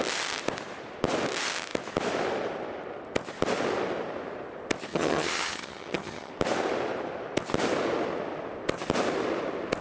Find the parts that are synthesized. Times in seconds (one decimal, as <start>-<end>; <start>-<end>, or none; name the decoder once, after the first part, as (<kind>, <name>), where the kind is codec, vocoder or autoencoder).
4.9-6.3 (vocoder, HiFi-GAN)

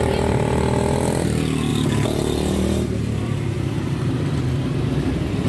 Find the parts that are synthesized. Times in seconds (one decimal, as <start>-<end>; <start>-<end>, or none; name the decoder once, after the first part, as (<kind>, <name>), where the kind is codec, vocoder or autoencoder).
1.7-4.1 (vocoder, BigVGAN v2)

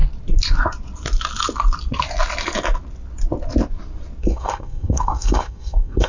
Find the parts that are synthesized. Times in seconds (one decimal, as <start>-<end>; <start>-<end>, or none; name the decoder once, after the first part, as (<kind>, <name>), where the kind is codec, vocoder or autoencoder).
4.2-6.1 (codec, SNAC)